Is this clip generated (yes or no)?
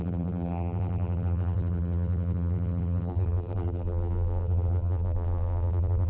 yes